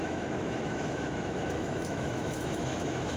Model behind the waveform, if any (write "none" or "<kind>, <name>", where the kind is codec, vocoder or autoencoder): autoencoder, DAC-VAE